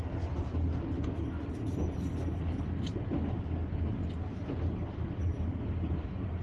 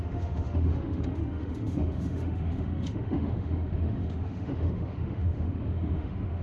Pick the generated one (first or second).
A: second